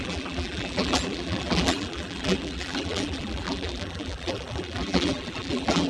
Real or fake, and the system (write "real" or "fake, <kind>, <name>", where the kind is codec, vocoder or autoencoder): fake, vocoder, BigVGAN v2